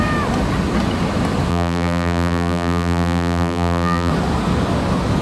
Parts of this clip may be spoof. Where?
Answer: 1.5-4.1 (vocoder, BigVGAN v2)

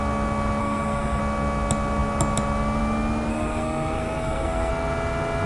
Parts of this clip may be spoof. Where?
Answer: 0.6-1.2 (codec, SNAC); 3.3-4.7